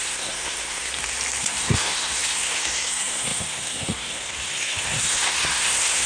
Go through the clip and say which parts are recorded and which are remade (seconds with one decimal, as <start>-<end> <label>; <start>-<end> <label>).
0.0-0.9 remade; 0.9-1.4 recorded; 1.4-6.1 remade